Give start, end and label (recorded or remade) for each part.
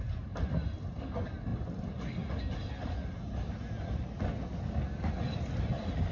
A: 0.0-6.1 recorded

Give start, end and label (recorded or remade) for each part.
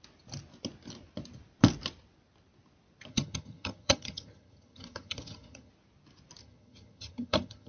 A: 0.0-3.1 recorded; 3.1-5.7 remade; 5.7-6.4 recorded; 6.4-7.7 remade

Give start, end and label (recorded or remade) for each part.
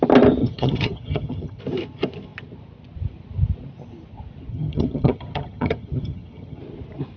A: 0.0-0.4 recorded; 0.4-1.6 remade; 1.6-4.5 recorded; 4.5-6.6 remade; 6.6-7.2 recorded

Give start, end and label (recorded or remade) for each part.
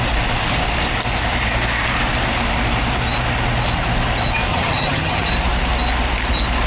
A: 0.0-4.5 recorded; 4.5-5.3 remade; 5.3-6.7 recorded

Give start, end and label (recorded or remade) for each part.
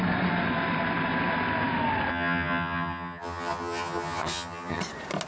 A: 0.0-2.1 recorded; 2.1-4.8 remade; 4.8-5.3 recorded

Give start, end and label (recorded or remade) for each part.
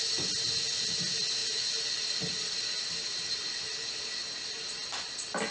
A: 0.0-5.5 recorded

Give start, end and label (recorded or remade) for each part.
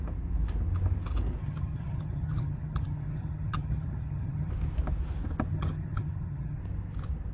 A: 0.0-1.4 recorded; 1.4-4.5 remade; 4.5-5.5 recorded; 5.5-6.6 remade; 6.6-7.3 recorded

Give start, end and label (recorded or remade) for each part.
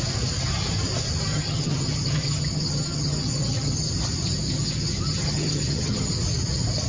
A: 0.0-1.3 recorded; 1.3-3.9 remade; 3.9-4.6 recorded; 4.6-6.1 remade; 6.1-6.9 recorded